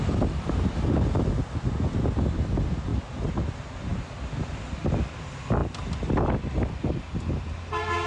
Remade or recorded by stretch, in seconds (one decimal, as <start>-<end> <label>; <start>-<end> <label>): 0.0-8.1 recorded